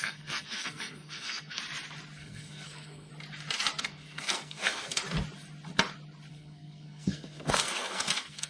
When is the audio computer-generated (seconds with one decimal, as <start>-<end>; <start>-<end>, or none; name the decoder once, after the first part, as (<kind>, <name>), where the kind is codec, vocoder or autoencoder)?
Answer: 0.0-1.6 (codec, SNAC); 2.2-3.1; 3.8-5.0; 6.3-8.5